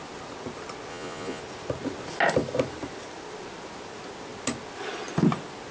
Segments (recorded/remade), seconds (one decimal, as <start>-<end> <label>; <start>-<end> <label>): 0.0-0.9 recorded; 0.9-1.4 remade; 1.4-5.7 recorded

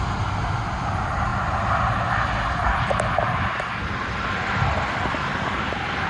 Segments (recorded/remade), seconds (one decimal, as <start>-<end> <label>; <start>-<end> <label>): 0.0-6.1 recorded

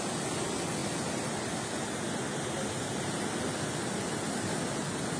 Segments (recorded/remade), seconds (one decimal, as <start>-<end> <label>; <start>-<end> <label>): 0.0-5.2 recorded